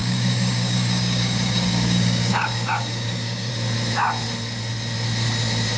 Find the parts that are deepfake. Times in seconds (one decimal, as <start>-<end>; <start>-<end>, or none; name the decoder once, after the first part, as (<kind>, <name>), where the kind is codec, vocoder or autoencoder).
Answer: 0.0-3.5 (codec, DAC)